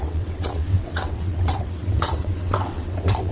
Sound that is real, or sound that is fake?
fake